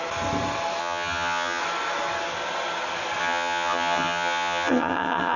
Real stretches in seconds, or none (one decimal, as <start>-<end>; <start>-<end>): 0.0-0.8; 1.6-3.2